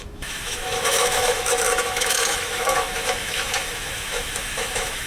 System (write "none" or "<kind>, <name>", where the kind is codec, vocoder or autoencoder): autoencoder, DAC-VAE